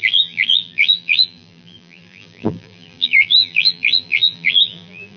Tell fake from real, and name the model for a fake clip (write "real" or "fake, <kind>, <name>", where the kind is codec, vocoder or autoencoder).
fake, vocoder, BigVGAN v2